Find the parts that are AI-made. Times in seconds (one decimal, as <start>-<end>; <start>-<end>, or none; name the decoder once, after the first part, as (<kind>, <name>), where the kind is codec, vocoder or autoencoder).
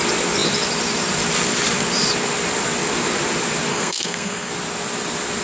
3.7-4.5 (codec, SNAC)